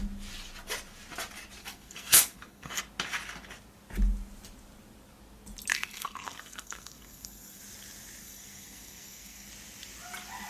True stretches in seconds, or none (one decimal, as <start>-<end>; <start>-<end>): 0.0-1.6; 2.8-5.7; 7.6-8.2; 9.5-10.5